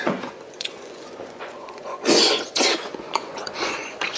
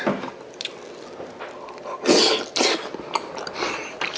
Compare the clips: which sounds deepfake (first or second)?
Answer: first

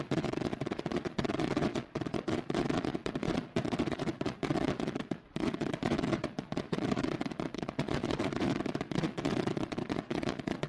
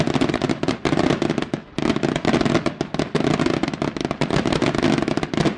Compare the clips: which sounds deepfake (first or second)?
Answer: first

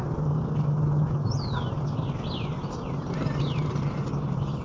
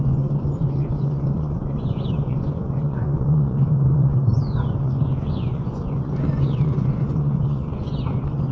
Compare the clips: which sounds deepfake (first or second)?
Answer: second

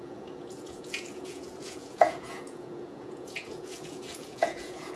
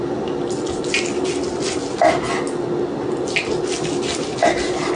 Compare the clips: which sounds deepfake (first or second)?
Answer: first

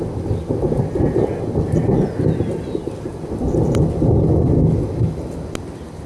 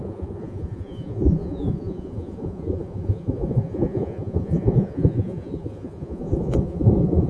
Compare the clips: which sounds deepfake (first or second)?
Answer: second